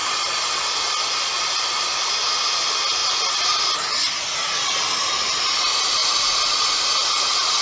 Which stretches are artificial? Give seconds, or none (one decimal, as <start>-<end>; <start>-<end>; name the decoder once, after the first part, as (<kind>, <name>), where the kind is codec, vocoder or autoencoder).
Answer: none